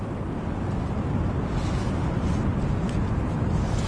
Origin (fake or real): real